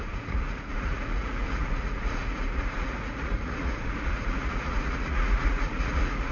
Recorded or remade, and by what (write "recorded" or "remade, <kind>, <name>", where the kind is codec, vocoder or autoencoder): remade, vocoder, Vocos